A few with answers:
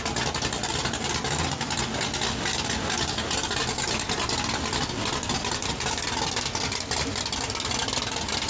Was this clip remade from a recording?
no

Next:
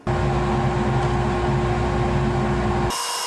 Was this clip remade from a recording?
no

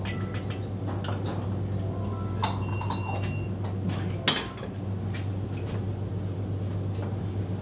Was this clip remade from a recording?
no